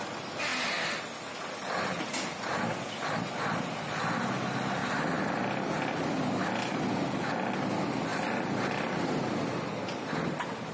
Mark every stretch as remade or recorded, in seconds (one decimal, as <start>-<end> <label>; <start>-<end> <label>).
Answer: 0.0-10.7 recorded